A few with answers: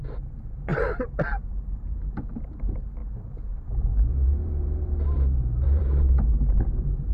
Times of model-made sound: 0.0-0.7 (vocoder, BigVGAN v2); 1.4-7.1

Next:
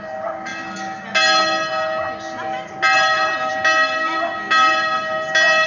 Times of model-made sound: none

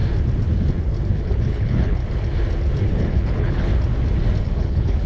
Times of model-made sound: 1.1-2.0 (codec, HILCodec); 2.9-3.7; 4.4-5.1